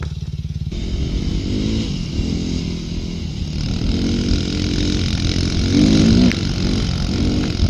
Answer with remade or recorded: recorded